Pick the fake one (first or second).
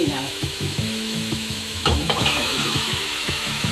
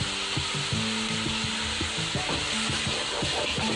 first